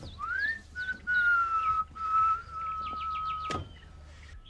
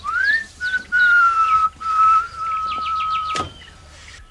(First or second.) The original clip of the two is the first